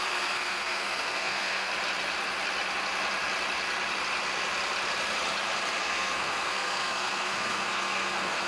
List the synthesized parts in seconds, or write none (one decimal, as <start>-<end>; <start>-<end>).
0.0-1.7; 5.8-8.5